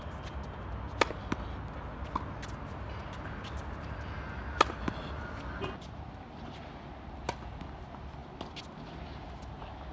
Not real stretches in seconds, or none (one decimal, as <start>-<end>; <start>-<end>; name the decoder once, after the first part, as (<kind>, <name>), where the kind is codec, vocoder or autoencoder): none